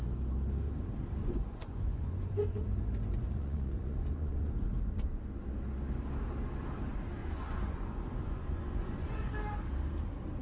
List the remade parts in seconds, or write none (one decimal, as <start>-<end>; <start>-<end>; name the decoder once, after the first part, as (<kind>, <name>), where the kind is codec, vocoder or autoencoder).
1.2-4.5 (vocoder, Vocos); 7.2-9.3

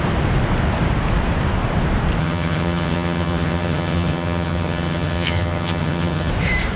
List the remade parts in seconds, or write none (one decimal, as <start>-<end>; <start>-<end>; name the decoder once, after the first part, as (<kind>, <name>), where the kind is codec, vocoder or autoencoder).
2.2-6.3 (vocoder, HiFi-GAN)

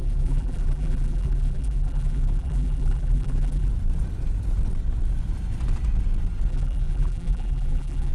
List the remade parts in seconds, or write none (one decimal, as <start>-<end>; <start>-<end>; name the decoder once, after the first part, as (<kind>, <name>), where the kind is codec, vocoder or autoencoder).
0.0-3.7 (vocoder, BigVGAN v2); 6.5-8.1

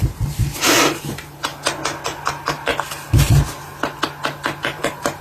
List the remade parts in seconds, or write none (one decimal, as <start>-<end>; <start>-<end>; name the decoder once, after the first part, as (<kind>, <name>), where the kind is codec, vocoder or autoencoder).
0.0-1.5 (vocoder, BigVGAN v2); 2.3-2.7; 4.6-5.2

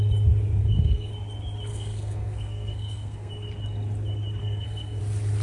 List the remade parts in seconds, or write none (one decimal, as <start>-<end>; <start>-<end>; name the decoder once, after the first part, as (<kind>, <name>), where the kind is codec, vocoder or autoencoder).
0.6-1.1 (codec, SNAC); 1.7-3.3; 4.4-5.0

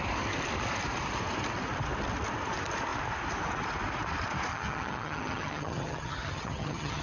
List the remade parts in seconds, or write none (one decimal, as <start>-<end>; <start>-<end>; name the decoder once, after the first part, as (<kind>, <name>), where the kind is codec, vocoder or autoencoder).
4.5-7.0 (vocoder, HiFi-GAN)